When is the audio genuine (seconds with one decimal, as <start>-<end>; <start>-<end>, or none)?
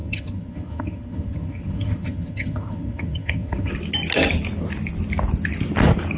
3.7-6.2